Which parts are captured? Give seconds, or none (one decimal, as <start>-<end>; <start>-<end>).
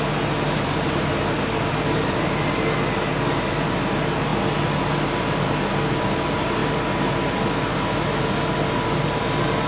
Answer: 0.0-9.7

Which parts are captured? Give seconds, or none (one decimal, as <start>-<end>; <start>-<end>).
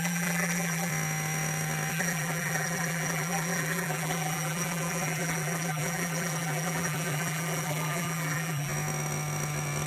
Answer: 0.9-1.9; 8.7-9.9